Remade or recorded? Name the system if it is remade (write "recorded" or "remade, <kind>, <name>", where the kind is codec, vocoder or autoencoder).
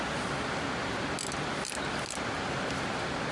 recorded